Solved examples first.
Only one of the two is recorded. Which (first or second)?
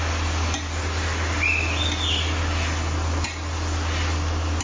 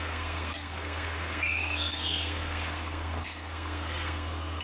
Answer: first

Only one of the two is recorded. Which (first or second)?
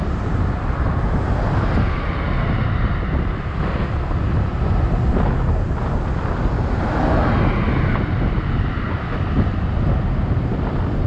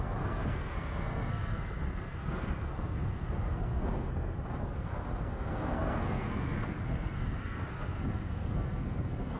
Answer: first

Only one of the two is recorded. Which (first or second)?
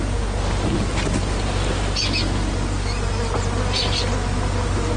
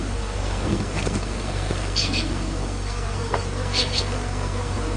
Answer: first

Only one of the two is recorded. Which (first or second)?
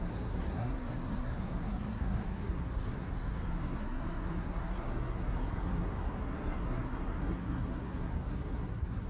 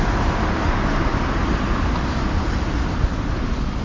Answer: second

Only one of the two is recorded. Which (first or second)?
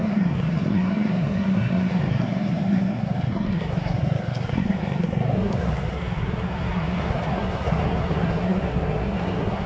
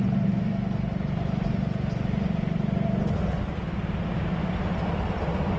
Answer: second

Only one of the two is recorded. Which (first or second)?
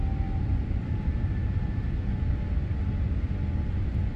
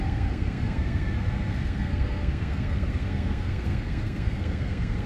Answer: first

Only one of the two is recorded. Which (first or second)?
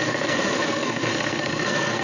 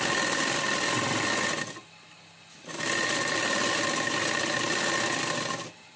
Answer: second